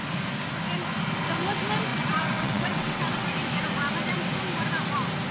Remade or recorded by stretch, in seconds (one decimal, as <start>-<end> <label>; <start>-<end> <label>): 0.0-1.9 recorded; 1.9-3.3 remade; 3.3-5.3 recorded